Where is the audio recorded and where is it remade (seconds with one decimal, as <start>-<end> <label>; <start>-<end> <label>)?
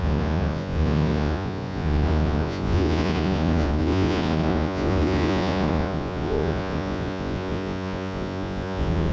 0.0-9.1 remade